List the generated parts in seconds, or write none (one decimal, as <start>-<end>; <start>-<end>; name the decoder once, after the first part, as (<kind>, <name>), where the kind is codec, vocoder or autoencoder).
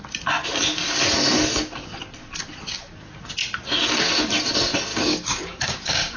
4.9-6.2 (codec, DAC)